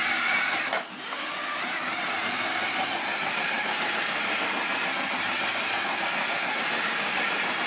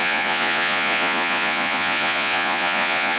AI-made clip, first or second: second